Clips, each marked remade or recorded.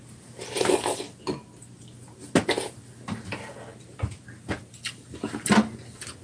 recorded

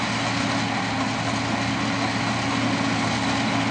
recorded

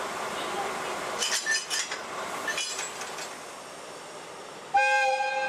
recorded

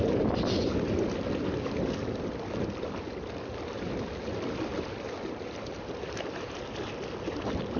recorded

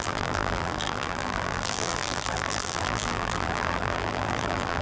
remade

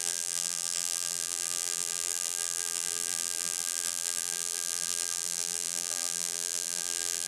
remade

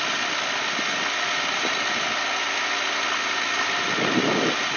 recorded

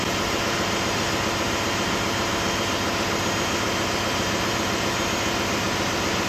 recorded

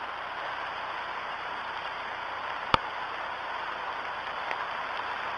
remade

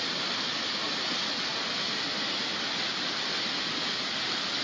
recorded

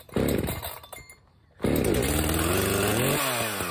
recorded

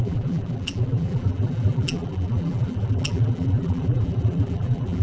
remade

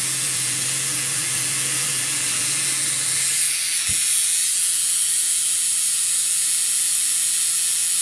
remade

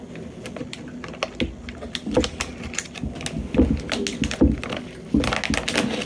recorded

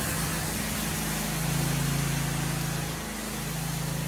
recorded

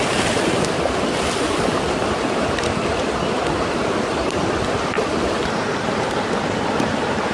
remade